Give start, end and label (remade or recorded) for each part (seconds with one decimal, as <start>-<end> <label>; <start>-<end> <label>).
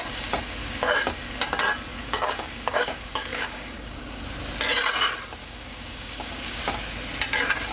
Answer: 0.0-0.6 recorded; 0.6-1.1 remade; 1.1-1.9 recorded; 1.9-4.2 remade; 4.2-5.4 recorded; 5.4-6.6 remade; 6.6-7.7 recorded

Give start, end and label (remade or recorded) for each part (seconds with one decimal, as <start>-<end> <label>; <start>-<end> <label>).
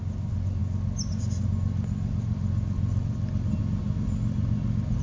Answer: 0.0-5.0 recorded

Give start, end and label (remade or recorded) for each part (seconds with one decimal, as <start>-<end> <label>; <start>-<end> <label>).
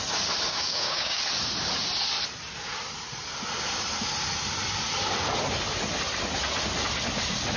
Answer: 0.0-0.5 recorded; 0.5-1.2 remade; 1.2-7.6 recorded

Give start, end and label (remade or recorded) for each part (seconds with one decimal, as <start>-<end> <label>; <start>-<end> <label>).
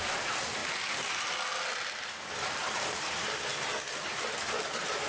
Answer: 0.0-5.1 recorded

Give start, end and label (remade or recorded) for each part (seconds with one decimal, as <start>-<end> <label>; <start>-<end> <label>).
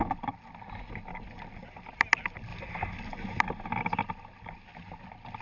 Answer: 0.0-5.4 recorded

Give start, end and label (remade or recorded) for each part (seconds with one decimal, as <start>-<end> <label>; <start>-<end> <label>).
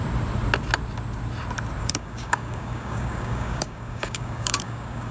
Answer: 0.0-1.8 recorded; 1.8-5.1 remade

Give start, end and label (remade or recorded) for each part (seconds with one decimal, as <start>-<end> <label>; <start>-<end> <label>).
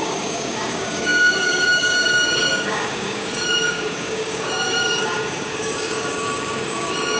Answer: 0.0-7.2 remade